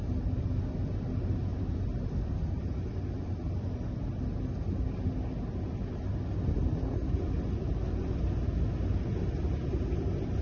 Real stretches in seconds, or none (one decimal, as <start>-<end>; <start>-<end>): 0.0-10.4